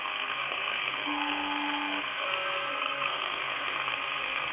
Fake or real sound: fake